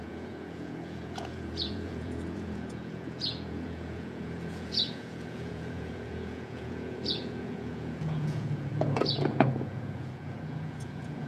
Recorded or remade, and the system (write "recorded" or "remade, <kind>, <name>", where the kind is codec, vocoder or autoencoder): remade, vocoder, Vocos